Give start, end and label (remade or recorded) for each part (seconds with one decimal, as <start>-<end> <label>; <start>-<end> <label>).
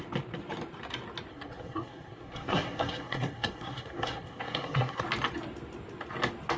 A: 0.0-1.3 recorded; 1.3-5.0 remade; 5.0-6.6 recorded